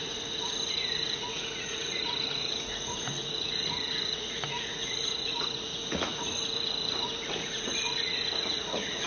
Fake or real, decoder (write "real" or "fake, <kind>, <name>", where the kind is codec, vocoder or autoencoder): fake, vocoder, Vocos